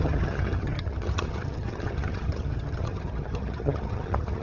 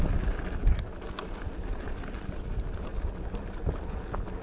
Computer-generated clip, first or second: first